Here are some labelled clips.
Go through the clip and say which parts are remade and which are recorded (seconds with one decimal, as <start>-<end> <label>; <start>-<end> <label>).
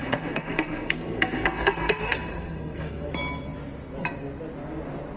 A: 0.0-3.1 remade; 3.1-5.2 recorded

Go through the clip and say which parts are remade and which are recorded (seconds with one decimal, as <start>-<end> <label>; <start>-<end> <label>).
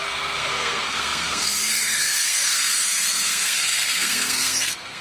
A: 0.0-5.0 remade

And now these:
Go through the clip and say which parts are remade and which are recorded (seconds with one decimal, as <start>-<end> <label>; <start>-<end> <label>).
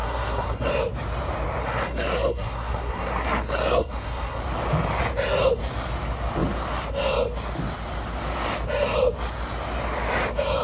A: 0.0-0.7 remade; 0.7-1.6 recorded; 1.6-4.4 remade; 4.4-10.6 recorded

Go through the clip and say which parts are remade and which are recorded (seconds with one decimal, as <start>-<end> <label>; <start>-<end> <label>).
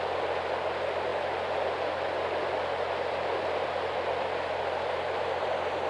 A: 0.0-5.9 recorded